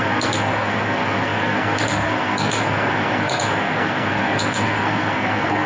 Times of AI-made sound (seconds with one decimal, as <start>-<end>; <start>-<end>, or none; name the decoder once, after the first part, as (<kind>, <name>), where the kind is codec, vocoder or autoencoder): 0.0-5.7 (codec, SNAC)